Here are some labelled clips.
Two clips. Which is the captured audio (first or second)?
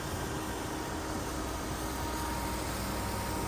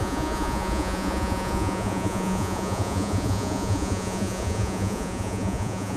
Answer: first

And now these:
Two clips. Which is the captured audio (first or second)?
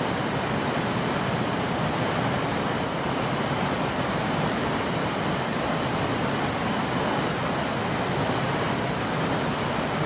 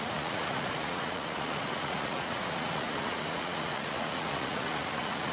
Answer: first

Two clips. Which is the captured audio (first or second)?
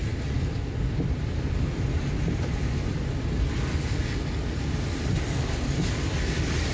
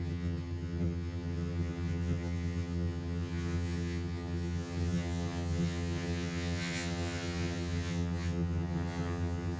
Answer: first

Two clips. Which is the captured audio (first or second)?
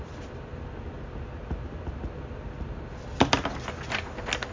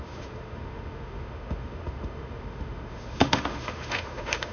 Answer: first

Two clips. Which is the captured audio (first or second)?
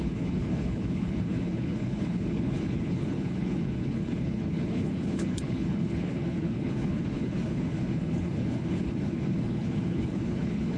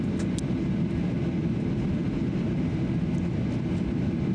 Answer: second